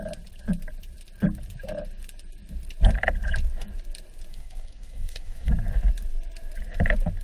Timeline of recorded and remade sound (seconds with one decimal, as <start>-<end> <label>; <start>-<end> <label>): 0.0-4.3 recorded; 4.3-5.5 remade; 5.5-7.2 recorded

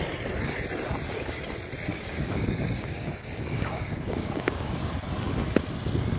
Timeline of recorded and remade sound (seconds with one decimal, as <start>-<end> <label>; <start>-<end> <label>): 0.0-1.9 recorded; 1.9-4.7 remade; 4.7-6.2 recorded

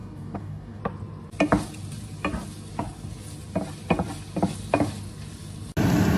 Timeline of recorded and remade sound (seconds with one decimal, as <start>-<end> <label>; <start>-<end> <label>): 0.0-0.8 remade; 0.8-6.2 recorded